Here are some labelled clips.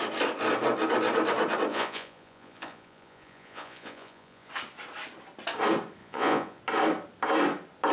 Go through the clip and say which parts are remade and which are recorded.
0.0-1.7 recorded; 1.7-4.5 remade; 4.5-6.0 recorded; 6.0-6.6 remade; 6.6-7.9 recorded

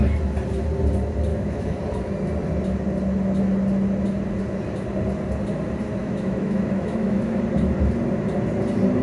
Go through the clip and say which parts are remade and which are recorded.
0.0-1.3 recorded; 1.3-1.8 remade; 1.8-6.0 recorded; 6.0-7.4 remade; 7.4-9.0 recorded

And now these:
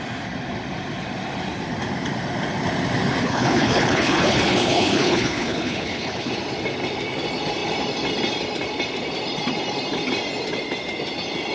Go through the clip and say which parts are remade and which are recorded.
0.0-3.2 recorded; 3.2-6.3 remade; 6.3-11.5 recorded

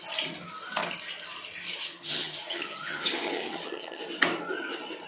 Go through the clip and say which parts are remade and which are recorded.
0.0-1.8 recorded; 1.8-4.0 remade; 4.0-5.1 recorded

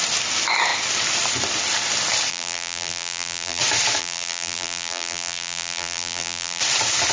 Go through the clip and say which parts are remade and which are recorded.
0.0-2.3 recorded; 2.3-3.6 remade; 3.6-4.0 recorded; 4.0-6.6 remade; 6.6-7.1 recorded

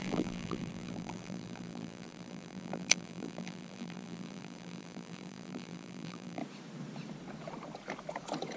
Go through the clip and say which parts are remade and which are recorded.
0.0-6.4 remade; 6.4-8.6 recorded

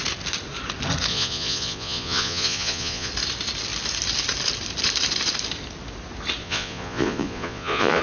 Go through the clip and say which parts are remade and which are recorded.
0.0-1.1 recorded; 1.1-3.1 remade; 3.1-6.4 recorded; 6.4-8.0 remade

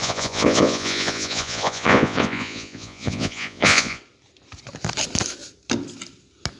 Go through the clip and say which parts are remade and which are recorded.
0.0-4.0 remade; 4.0-6.6 recorded